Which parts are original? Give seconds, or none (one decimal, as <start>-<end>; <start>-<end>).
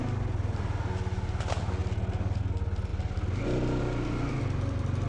0.0-5.1